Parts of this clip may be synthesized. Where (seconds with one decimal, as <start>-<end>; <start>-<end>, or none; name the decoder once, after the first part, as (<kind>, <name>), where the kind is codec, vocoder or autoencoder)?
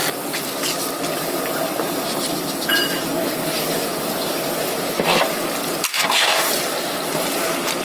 5.9-6.5 (codec, DAC)